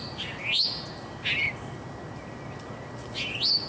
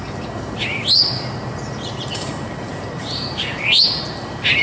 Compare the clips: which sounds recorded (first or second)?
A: first